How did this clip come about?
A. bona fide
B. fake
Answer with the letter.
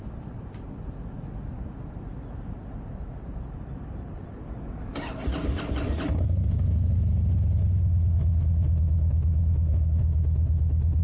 A